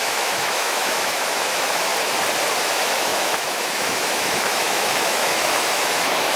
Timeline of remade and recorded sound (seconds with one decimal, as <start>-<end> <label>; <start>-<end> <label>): 0.0-1.9 remade; 1.9-2.6 recorded; 2.6-6.4 remade